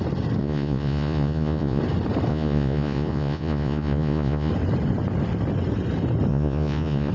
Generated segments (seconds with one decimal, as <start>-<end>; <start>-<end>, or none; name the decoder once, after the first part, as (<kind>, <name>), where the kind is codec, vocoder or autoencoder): 0.4-1.8 (vocoder, Vocos); 2.3-4.5; 6.3-7.1